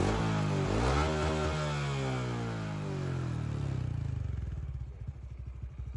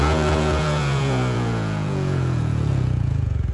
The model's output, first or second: second